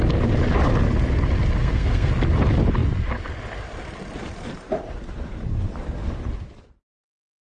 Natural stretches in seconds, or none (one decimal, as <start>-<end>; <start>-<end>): 0.0-1.6; 2.1-7.4